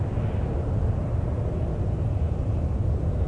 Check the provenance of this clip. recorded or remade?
recorded